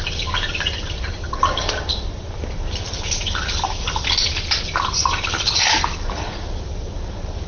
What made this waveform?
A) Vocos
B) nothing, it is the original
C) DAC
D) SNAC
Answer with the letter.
B